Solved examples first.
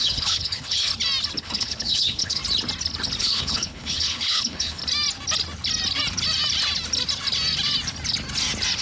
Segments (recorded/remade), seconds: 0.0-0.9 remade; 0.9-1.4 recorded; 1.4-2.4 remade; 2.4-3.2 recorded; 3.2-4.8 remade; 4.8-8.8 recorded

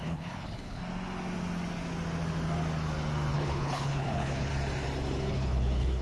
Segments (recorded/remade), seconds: 0.0-0.8 remade; 0.8-3.3 recorded; 3.3-4.5 remade; 4.5-5.3 recorded; 5.3-6.0 remade

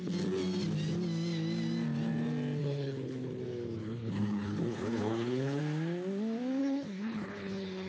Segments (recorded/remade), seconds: 0.0-2.6 recorded; 2.6-3.4 remade; 3.4-3.8 recorded; 3.8-5.6 remade; 5.6-6.6 recorded; 6.6-7.9 remade

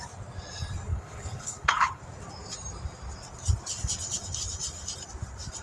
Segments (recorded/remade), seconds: 0.0-0.9 recorded; 0.9-2.0 remade; 2.0-5.6 recorded

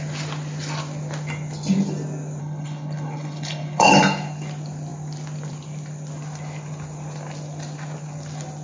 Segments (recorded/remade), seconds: 0.0-2.4 recorded; 2.4-4.0 remade; 4.0-8.6 recorded

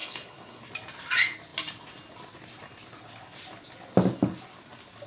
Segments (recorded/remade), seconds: 0.0-0.6 remade; 0.6-5.1 recorded

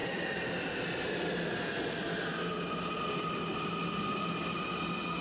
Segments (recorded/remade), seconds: 0.0-5.2 recorded